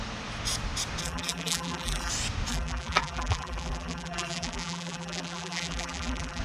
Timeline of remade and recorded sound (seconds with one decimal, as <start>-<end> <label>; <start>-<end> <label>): 0.0-1.0 recorded; 1.0-2.1 remade; 2.1-2.5 recorded; 2.5-6.4 remade

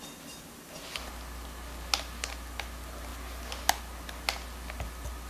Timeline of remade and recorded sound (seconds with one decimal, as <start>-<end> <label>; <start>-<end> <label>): 0.0-5.3 recorded